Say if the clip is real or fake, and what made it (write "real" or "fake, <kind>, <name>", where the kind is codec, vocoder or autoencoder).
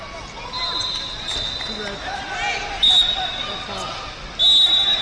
real